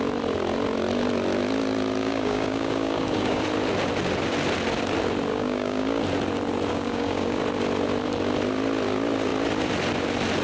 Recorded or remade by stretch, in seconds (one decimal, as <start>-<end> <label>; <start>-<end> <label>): 0.0-2.0 recorded; 2.0-3.4 remade; 3.4-5.3 recorded; 5.3-6.0 remade; 6.0-6.7 recorded; 6.7-7.4 remade; 7.4-10.4 recorded